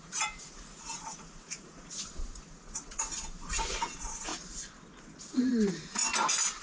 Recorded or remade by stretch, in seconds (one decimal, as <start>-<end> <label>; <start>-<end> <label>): 0.0-4.3 remade; 4.3-5.3 recorded; 5.3-6.0 remade; 6.0-6.6 recorded